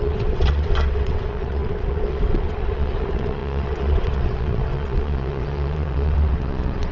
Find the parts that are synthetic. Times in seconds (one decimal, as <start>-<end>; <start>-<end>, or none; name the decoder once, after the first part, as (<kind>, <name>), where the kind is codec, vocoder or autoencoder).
0.0-6.9 (vocoder, WaveNeXt)